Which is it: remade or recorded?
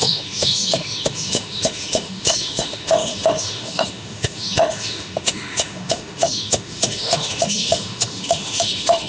remade